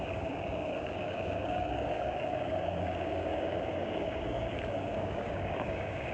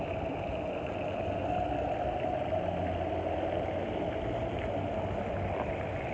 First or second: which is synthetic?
first